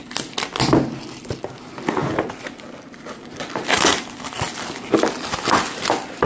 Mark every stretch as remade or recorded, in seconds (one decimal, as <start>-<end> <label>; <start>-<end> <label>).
0.0-2.0 recorded; 2.0-5.5 remade; 5.5-6.3 recorded